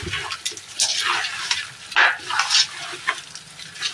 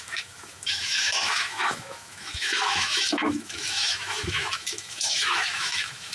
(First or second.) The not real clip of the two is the second